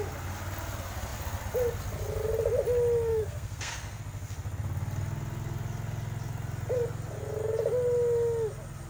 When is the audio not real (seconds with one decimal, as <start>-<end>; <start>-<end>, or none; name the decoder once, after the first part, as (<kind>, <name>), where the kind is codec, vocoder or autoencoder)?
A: 3.1-4.0 (codec, SNAC)